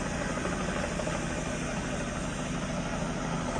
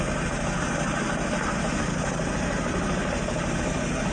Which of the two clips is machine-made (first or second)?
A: second